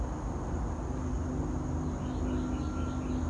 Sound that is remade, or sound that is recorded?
recorded